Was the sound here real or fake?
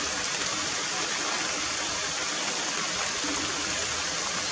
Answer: real